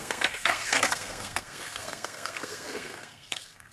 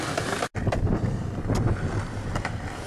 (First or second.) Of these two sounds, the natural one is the second